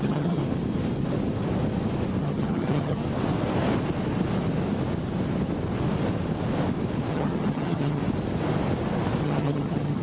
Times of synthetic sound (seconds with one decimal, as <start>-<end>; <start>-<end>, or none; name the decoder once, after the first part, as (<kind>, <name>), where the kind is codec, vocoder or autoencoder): 0.0-0.4 (vocoder, HiFi-GAN); 2.2-3.0; 7.1-8.0; 9.2-10.0